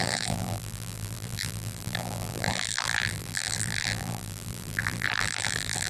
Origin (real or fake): fake